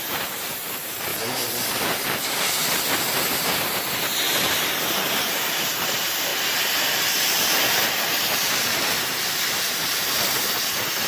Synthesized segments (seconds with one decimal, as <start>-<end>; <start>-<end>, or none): 0.0-1.1; 2.5-6.3; 7.1-11.1